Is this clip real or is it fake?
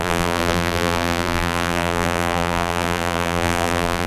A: fake